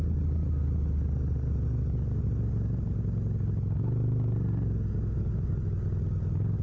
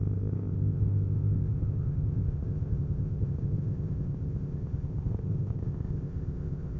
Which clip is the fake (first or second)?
second